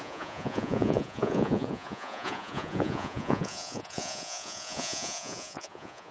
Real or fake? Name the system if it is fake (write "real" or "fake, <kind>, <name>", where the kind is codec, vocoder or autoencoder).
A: fake, vocoder, Vocos